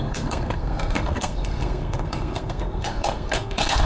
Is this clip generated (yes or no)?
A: yes